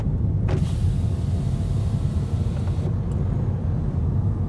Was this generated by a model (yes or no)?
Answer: no